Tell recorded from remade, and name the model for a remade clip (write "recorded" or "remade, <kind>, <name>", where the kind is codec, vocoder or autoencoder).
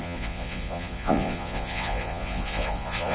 remade, vocoder, Vocos